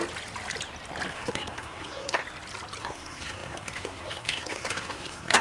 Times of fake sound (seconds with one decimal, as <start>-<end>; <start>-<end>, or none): 1.1-2.2; 2.8-5.4

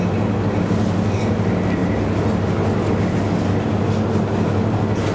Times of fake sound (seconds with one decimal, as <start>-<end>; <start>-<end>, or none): none

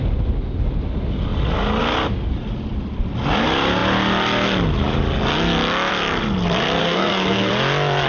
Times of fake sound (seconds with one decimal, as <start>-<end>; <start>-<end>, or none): 6.8-7.5